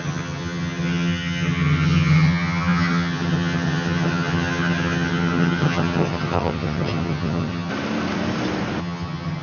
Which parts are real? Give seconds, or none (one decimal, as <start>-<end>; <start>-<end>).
7.7-8.8